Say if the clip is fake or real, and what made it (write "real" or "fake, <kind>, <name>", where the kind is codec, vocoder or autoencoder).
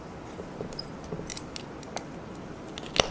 real